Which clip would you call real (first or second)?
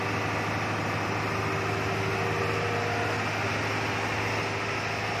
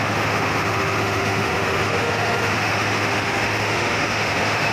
first